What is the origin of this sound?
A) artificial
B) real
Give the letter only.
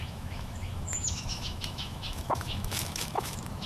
A